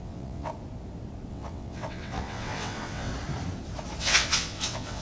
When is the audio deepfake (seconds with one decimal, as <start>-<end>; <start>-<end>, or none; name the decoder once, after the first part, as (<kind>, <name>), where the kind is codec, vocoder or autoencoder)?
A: 0.0-0.5 (vocoder, WaveNeXt); 1.3-3.1; 4.0-5.0